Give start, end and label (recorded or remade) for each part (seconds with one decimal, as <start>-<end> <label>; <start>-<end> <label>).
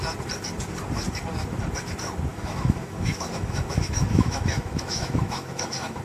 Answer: 0.0-2.3 recorded; 2.3-6.0 remade